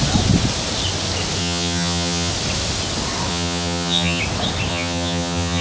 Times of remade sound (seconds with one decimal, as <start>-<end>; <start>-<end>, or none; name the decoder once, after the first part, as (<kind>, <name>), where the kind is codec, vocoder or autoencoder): 1.4-2.3 (vocoder, HiFi-GAN); 3.3-4.2; 4.7-5.6